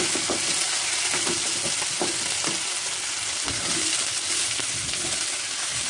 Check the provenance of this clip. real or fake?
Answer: real